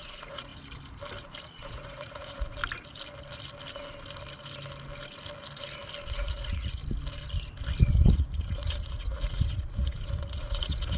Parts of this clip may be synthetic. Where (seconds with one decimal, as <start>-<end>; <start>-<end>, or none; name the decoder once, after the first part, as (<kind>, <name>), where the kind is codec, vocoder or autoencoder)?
0.0-0.5 (vocoder, Vocos); 1.4-2.6; 6.0-6.8; 7.9-11.0